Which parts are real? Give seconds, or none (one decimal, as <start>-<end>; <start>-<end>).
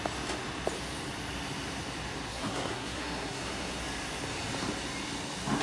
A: 0.0-2.3; 3.8-5.6